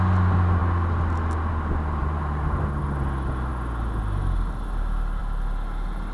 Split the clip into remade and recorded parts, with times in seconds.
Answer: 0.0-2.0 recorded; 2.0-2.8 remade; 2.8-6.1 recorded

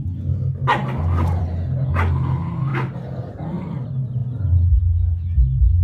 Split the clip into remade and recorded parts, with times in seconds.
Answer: 0.0-5.8 recorded

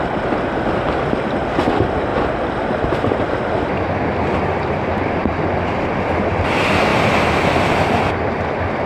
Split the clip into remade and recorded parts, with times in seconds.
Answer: 0.0-8.9 recorded

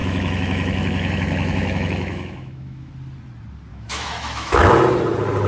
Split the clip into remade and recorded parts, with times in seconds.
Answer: 0.0-2.9 remade; 2.9-3.7 recorded; 3.7-4.7 remade; 4.7-5.5 recorded

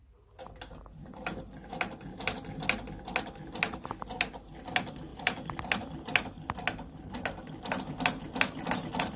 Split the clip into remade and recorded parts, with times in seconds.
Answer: 0.0-9.2 recorded